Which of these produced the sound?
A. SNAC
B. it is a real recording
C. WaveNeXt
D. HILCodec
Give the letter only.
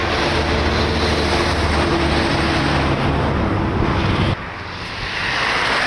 B